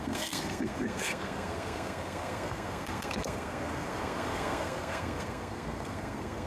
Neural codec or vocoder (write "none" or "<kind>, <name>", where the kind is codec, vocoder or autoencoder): codec, SNAC